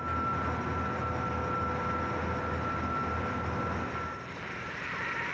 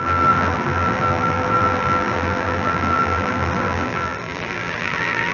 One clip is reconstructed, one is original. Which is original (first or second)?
first